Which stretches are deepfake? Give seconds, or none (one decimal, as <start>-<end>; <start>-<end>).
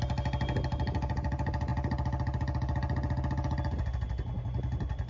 none